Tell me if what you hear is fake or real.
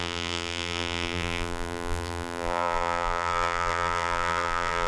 fake